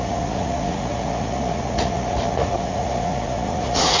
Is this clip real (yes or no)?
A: no